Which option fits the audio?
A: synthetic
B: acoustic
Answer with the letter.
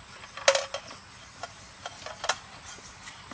B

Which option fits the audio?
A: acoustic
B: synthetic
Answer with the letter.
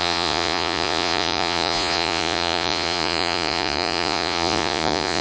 B